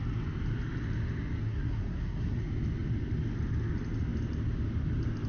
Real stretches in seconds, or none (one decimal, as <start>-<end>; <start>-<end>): 0.0-1.4; 2.4-5.3